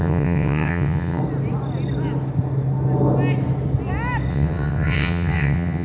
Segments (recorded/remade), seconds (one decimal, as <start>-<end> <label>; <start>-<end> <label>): 0.0-1.2 remade; 1.2-4.3 recorded; 4.3-5.8 remade